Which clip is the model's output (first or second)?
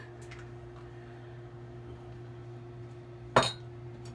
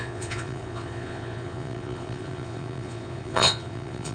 second